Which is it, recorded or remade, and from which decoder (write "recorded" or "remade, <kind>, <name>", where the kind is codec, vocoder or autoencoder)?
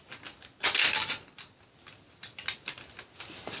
recorded